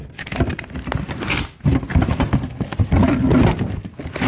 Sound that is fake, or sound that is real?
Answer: real